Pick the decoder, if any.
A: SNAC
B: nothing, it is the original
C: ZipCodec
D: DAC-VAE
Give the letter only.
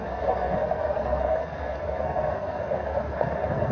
A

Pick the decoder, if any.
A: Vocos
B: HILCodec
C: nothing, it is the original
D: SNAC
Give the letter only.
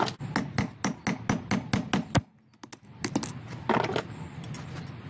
C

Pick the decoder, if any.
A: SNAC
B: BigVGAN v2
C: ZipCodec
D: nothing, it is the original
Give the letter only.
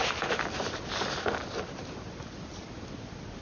D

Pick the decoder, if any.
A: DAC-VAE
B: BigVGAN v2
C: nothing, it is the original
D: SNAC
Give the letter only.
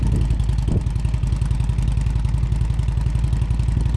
C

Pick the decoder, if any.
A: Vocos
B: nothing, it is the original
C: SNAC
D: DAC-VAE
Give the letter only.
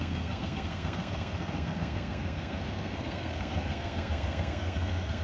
C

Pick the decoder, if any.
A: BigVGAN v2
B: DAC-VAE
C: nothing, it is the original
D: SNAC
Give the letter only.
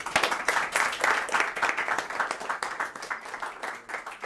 C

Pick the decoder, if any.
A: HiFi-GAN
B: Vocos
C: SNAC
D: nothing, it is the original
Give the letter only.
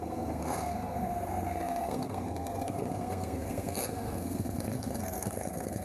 C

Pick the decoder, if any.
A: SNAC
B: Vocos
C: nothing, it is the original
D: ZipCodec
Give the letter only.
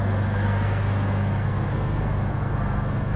A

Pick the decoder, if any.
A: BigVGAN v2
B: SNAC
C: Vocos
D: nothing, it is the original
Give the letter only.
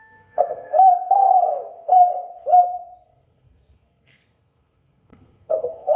B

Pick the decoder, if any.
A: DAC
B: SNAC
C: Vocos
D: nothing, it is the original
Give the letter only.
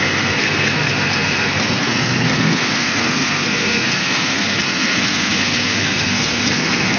B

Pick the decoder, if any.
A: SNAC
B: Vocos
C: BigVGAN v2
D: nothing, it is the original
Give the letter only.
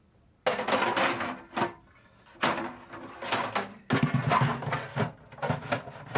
D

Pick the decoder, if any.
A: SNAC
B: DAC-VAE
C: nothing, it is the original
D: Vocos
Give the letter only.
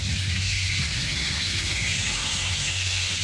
A